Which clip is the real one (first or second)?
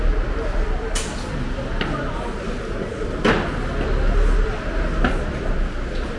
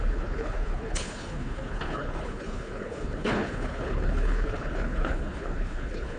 first